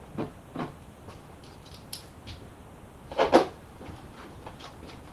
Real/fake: fake